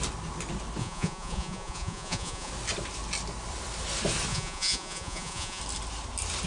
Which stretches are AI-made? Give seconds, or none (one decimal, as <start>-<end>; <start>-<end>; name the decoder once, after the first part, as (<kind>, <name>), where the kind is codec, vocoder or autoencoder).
0.8-2.5 (vocoder, Vocos); 4.3-5.6